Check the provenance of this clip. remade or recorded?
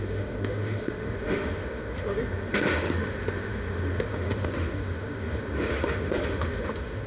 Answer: remade